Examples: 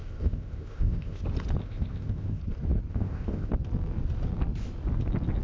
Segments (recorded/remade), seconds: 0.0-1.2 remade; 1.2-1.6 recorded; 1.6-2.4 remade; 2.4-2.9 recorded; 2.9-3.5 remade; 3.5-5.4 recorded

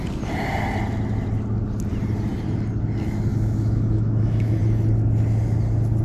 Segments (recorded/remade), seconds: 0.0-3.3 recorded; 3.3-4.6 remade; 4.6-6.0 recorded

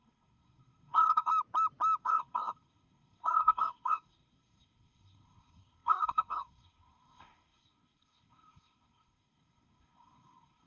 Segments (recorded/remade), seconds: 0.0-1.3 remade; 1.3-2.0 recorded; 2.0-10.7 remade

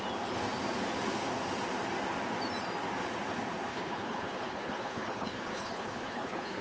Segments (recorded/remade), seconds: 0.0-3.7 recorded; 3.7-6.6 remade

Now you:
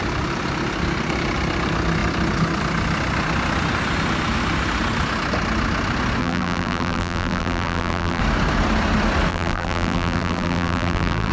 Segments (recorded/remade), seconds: 0.0-6.2 recorded; 6.2-8.2 remade; 8.2-9.3 recorded; 9.3-11.3 remade

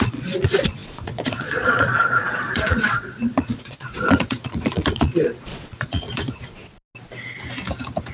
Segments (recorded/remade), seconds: 0.0-6.6 remade; 6.6-8.1 recorded